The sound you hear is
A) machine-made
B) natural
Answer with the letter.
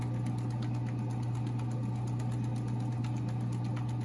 B